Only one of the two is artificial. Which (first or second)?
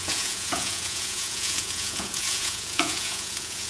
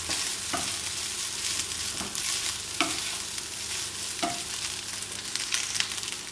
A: first